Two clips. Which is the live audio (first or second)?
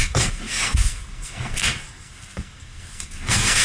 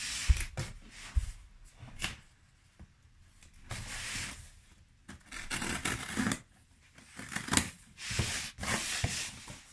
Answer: second